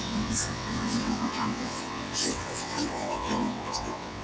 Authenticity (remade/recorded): remade